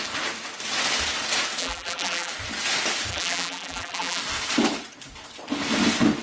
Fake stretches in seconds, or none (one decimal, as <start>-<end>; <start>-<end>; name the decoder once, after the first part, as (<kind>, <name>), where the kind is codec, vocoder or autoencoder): 1.6-2.3 (vocoder, BigVGAN v2); 3.1-4.2